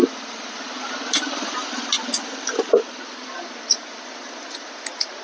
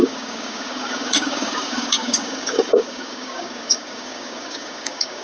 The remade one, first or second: second